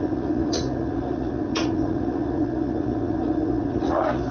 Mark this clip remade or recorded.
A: remade